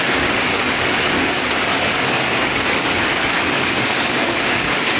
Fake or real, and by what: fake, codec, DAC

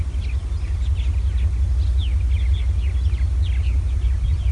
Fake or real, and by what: real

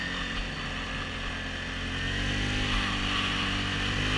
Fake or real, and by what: real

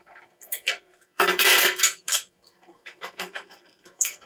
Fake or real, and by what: fake, codec, SNAC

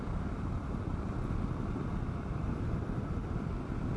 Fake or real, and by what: real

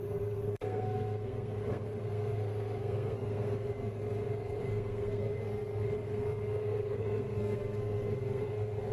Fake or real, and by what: fake, codec, SNAC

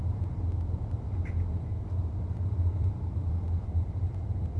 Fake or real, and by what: fake, vocoder, BigVGAN v2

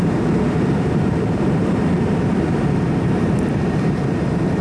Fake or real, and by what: fake, vocoder, BigVGAN v2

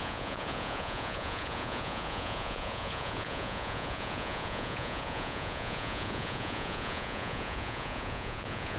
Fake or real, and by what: fake, vocoder, Vocos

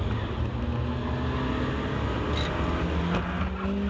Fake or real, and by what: real